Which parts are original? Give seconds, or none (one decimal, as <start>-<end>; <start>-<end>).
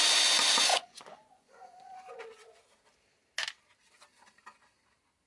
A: 0.0-0.7; 2.6-5.3